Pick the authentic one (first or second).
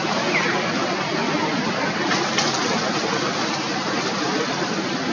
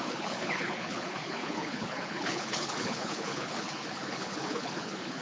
first